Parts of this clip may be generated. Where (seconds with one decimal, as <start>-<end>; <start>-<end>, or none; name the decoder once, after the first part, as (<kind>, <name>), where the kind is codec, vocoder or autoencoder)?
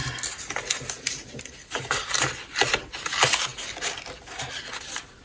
none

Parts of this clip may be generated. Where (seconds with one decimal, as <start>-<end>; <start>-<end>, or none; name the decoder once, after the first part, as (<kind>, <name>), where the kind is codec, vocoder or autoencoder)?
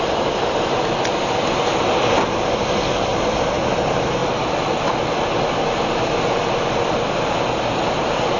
0.0-4.2 (vocoder, BigVGAN v2); 6.5-8.4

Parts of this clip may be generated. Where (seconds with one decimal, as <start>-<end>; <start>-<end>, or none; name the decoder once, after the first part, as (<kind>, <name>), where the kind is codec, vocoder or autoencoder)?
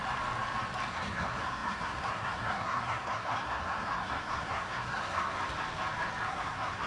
0.9-5.4 (codec, SNAC); 6.3-6.9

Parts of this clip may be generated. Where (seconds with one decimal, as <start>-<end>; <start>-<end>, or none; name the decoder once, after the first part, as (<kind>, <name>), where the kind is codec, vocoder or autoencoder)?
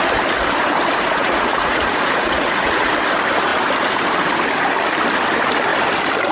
1.2-2.9 (vocoder, Vocos)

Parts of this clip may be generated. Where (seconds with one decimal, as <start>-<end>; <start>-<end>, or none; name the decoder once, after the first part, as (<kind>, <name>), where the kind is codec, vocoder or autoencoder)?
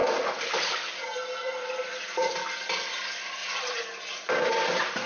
0.0-5.1 (vocoder, BigVGAN v2)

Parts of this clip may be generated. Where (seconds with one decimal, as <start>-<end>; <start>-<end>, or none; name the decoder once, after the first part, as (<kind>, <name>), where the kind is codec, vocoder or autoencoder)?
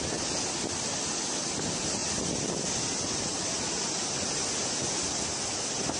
none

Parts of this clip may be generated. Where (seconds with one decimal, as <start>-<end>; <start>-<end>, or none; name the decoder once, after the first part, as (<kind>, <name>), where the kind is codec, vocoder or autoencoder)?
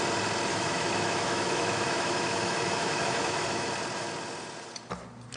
0.5-3.7 (autoencoder, DAC-VAE)